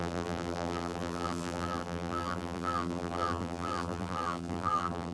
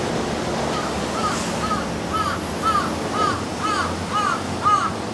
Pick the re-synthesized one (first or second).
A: first